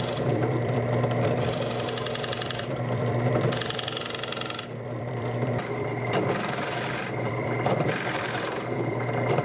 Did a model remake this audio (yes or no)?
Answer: yes